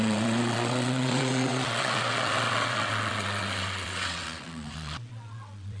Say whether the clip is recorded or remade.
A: remade